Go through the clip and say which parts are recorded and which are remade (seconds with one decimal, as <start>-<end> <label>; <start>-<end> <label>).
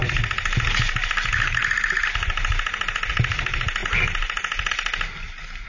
0.0-5.7 recorded